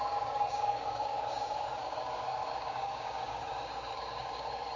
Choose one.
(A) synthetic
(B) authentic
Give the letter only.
A